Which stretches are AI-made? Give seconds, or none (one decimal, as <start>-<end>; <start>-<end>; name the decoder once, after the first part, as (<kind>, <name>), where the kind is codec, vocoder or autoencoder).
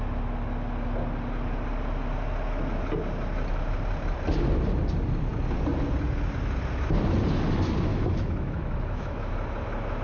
7.9-9.3 (autoencoder, DAC-VAE)